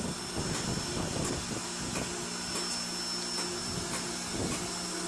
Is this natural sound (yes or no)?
yes